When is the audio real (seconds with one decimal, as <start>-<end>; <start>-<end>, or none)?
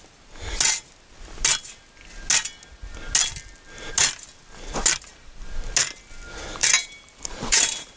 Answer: 0.0-6.6